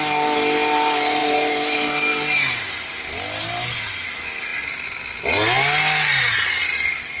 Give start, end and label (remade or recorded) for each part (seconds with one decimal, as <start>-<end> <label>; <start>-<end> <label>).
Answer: 0.0-7.2 recorded